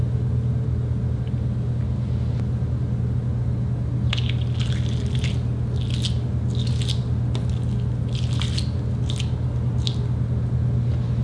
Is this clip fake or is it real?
real